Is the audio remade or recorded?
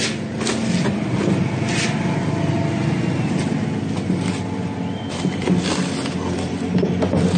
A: recorded